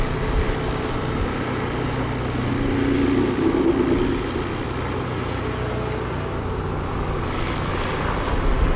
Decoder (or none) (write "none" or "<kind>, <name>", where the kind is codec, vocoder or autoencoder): none